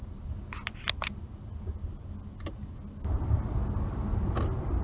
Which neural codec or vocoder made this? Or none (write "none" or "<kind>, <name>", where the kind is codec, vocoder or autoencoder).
none